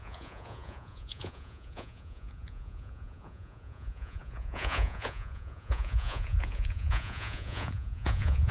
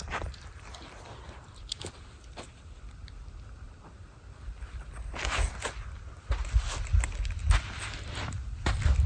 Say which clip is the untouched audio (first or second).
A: second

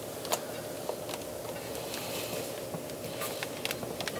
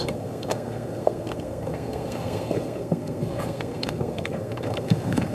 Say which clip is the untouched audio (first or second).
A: first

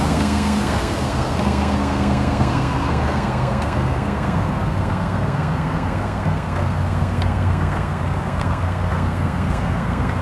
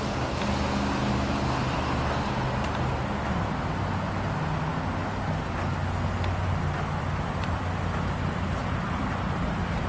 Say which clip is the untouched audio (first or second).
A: second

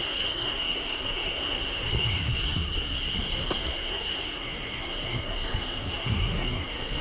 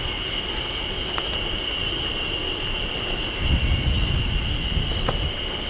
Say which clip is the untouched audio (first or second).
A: second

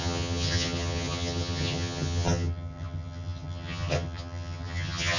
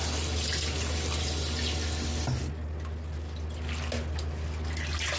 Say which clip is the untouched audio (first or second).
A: second